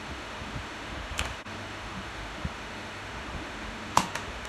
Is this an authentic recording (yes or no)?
no